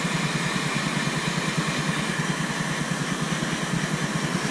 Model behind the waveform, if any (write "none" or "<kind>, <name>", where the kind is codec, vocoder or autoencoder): none